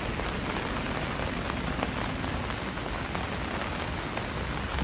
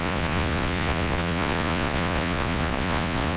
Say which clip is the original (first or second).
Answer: first